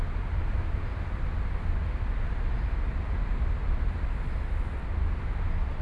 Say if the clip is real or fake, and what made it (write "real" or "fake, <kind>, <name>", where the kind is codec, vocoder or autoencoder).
real